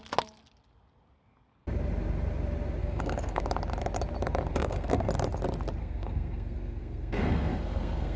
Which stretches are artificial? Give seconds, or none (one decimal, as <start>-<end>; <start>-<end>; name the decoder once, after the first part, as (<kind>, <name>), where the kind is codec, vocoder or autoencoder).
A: 2.8-3.4 (codec, SNAC); 4.5-5.1; 5.8-8.2